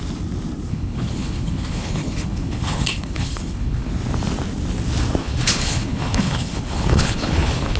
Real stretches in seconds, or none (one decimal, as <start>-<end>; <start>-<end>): 0.0-0.7; 3.9-5.2